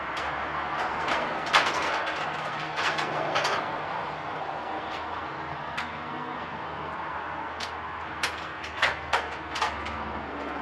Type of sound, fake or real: fake